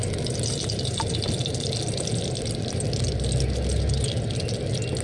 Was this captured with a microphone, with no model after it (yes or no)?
yes